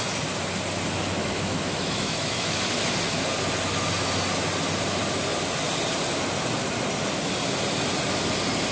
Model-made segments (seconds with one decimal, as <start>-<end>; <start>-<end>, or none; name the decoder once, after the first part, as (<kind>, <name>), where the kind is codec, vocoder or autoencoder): 1.2-2.8 (autoencoder, DAC-VAE)